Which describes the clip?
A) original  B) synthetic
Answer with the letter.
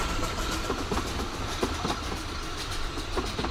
A